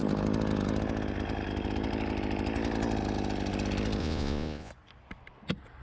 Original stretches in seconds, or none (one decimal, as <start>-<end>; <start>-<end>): 0.0-4.0; 4.7-5.8